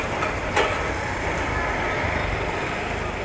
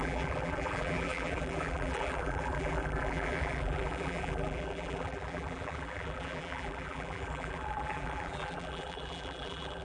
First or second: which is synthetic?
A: second